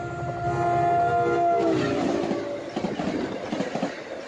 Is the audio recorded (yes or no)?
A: yes